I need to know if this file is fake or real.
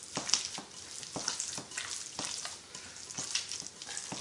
real